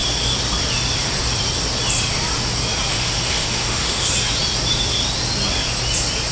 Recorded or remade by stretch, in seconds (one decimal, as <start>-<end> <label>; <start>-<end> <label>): 0.0-2.9 recorded; 2.9-4.1 remade; 4.1-6.3 recorded